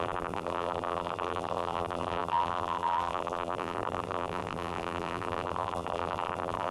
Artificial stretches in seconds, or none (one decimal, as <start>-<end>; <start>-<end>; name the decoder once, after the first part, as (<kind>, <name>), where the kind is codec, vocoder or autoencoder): 0.0-6.7 (vocoder, BigVGAN v2)